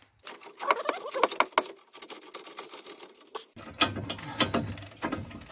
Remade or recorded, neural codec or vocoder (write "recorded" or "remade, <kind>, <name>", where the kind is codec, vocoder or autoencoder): recorded